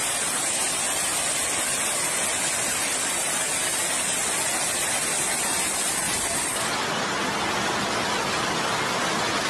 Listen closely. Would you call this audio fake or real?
real